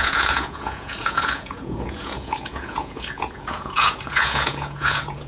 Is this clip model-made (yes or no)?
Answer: yes